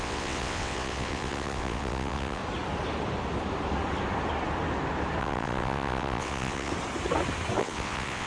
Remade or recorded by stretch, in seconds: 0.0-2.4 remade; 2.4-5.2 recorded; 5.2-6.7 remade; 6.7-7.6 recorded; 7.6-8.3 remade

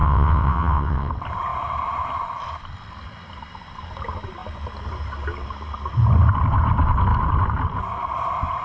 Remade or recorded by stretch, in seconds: 0.0-1.1 remade; 1.1-8.6 recorded

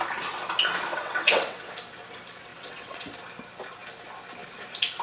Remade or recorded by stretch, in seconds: 0.0-0.9 recorded; 0.9-1.7 remade; 1.7-2.5 recorded; 2.5-3.1 remade; 3.1-5.0 recorded

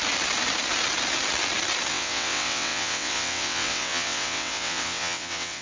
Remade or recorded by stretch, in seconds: 0.0-1.9 recorded; 1.9-5.6 remade